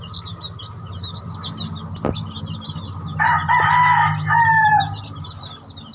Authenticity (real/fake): real